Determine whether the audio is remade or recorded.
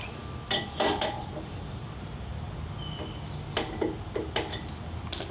recorded